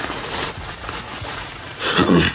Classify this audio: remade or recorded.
remade